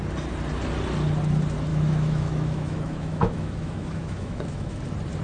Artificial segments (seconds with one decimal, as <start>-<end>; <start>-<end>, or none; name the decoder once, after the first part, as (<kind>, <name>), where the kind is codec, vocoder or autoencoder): 1.7-4.8 (autoencoder, DAC-VAE)